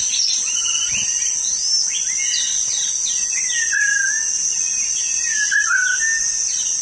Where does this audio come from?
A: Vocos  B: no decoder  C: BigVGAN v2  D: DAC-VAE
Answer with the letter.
B